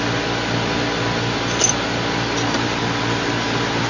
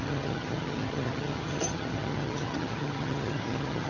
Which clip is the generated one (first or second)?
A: second